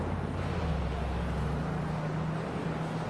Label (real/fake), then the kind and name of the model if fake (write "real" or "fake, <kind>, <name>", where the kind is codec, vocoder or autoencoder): real